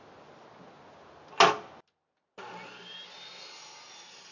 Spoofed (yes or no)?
no